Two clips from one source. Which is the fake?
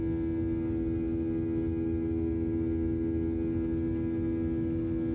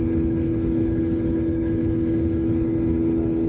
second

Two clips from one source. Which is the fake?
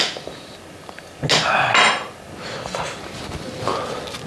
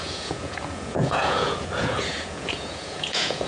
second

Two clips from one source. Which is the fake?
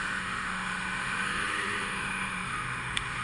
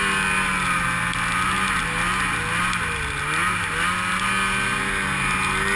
first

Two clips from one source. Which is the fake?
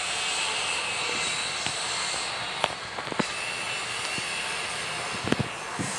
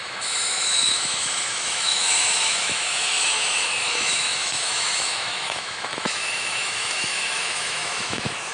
second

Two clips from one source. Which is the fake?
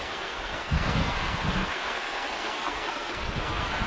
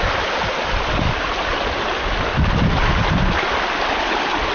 first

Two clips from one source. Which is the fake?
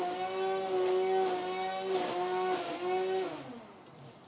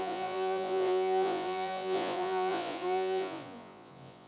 second